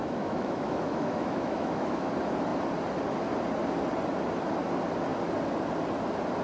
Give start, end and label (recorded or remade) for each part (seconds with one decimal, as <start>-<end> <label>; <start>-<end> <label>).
0.0-2.1 remade; 2.1-6.4 recorded